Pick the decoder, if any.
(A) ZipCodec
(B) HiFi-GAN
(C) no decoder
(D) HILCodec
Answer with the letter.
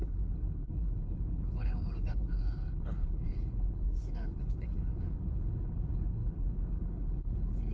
D